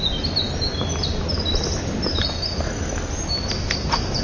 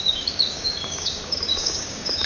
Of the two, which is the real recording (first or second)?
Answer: first